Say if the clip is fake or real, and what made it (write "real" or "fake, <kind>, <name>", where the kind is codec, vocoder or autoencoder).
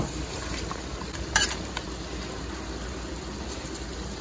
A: real